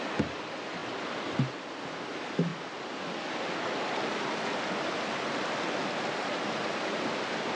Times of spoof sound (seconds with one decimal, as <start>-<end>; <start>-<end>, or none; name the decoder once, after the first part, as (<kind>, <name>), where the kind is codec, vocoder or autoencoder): none